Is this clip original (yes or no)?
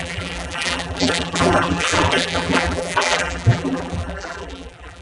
no